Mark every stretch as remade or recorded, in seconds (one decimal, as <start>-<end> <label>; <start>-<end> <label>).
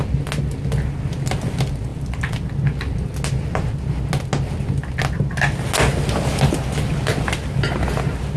0.0-8.4 recorded